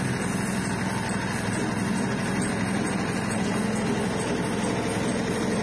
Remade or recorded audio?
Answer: recorded